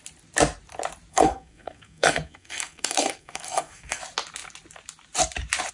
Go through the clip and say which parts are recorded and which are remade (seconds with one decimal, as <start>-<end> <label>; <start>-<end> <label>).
0.0-1.1 recorded; 1.1-4.0 remade; 4.0-5.7 recorded